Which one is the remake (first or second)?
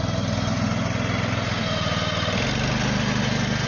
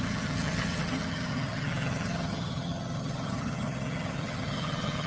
second